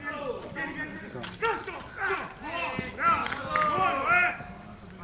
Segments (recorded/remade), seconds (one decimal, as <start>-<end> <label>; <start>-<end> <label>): 0.0-5.0 recorded